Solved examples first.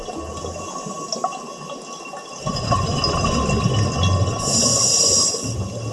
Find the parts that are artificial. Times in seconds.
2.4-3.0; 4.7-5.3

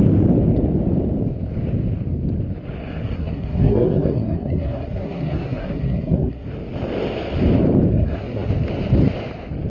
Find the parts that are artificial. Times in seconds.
2.8-6.5; 7.9-8.5

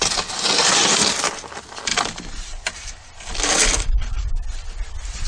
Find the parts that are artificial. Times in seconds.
1.9-4.7

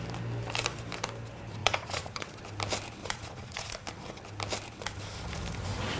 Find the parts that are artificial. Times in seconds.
1.6-2.3; 3.0-3.7

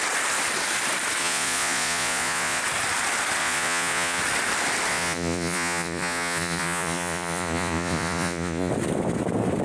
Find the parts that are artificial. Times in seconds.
1.2-2.6; 3.4-4.2; 4.9-8.7

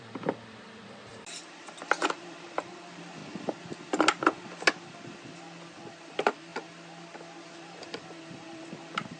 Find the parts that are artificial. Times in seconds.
0.0-1.1; 2.1-3.2; 6.1-6.5; 7.5-9.2

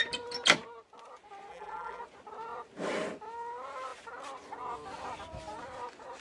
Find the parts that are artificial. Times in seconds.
1.5-2.0